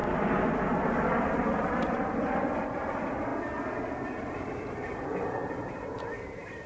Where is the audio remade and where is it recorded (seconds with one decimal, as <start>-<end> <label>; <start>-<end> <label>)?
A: 0.0-1.6 recorded; 1.6-3.3 remade; 3.3-3.8 recorded; 3.8-6.7 remade